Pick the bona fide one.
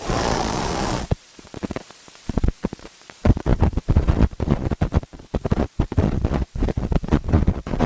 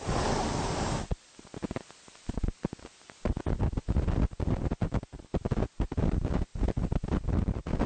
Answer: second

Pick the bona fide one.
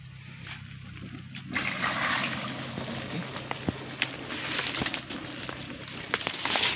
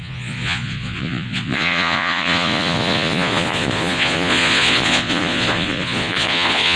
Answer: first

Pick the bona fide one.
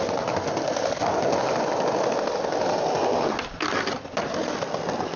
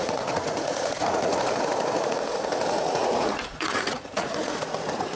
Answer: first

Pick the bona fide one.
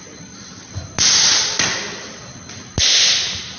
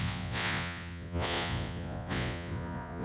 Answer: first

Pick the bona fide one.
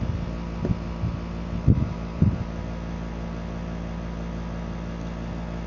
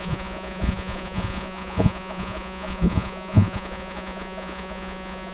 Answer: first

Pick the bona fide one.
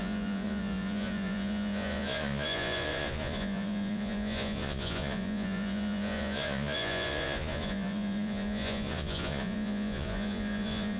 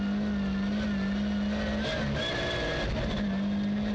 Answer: second